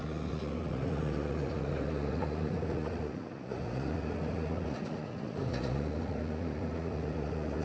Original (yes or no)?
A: no